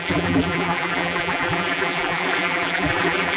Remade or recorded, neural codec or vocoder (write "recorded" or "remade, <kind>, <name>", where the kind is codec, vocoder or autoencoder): remade, vocoder, BigVGAN v2